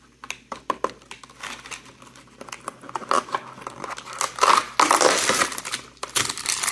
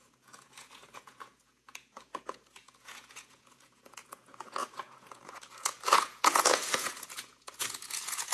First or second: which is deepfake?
second